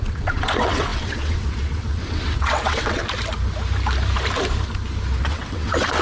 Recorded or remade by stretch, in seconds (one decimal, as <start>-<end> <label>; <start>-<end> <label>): 0.0-3.0 remade; 3.0-5.2 recorded; 5.2-6.0 remade